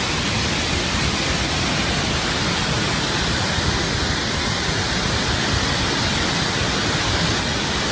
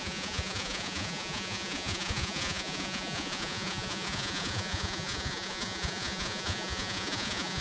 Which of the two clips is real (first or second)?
first